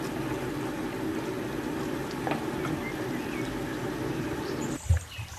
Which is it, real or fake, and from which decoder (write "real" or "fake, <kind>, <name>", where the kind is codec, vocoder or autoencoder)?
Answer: real